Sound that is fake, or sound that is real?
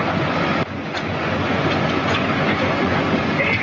fake